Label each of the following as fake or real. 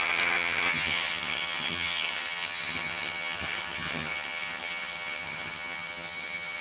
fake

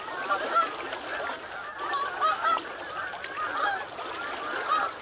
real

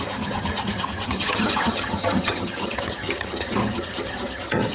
fake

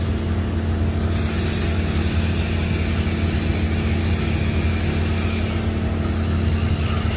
real